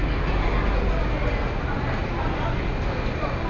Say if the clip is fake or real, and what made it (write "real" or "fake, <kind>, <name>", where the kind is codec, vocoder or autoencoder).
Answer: real